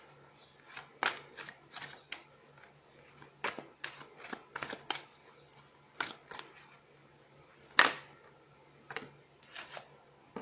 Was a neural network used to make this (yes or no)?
no